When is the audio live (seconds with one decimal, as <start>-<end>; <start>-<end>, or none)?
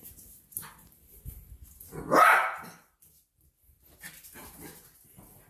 0.0-5.5